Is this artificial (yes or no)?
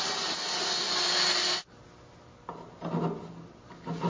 no